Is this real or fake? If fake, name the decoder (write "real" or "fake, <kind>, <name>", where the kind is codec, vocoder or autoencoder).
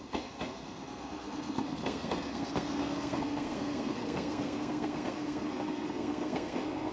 fake, codec, SNAC